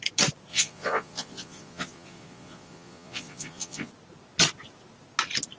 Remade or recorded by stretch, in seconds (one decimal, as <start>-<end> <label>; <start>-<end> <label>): 0.0-0.5 recorded; 0.5-3.9 remade; 3.9-5.6 recorded